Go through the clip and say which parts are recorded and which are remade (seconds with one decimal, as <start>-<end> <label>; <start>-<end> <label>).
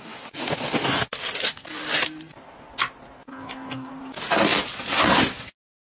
0.0-3.3 recorded; 3.3-3.9 remade; 3.9-6.0 recorded